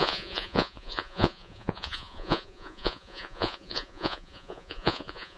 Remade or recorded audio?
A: remade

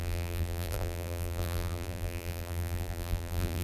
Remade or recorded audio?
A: remade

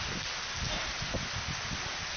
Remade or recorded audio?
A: recorded